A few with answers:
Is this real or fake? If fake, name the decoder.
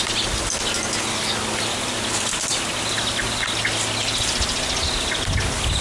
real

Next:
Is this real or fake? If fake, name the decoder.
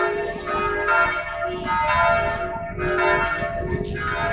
real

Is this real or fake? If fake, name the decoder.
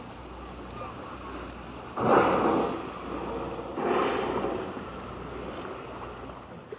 real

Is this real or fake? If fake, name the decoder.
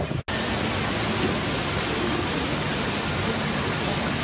real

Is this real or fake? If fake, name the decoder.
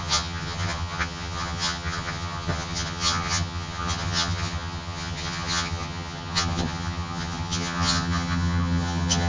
fake, vocoder, HiFi-GAN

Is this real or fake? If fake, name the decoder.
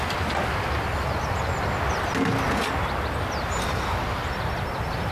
real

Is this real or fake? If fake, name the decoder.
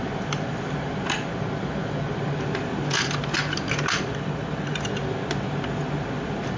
real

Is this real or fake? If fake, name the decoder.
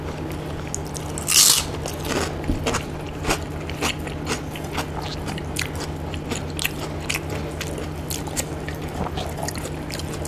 real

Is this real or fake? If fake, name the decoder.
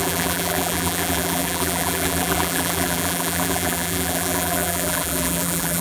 fake, vocoder, BigVGAN v2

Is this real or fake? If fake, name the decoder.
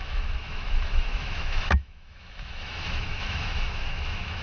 fake, autoencoder, DAC-VAE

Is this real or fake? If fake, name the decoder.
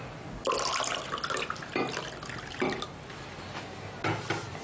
real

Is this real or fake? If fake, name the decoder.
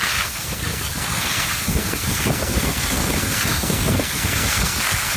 fake, codec, SNAC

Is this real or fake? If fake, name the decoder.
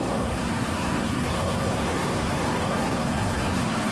fake, codec, SNAC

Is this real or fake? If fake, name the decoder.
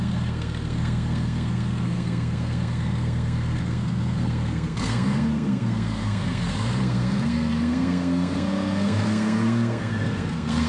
fake, codec, SNAC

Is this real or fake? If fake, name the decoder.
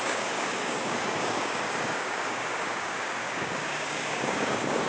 fake, codec, DAC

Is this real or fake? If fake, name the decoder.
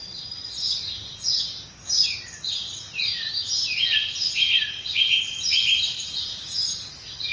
real